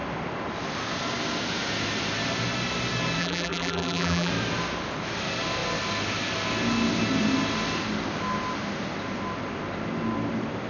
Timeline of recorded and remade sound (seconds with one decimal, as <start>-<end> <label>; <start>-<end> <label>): 0.0-3.2 recorded; 3.2-4.3 remade; 4.3-10.7 recorded